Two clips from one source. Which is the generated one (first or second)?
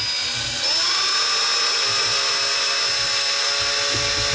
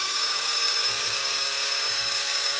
second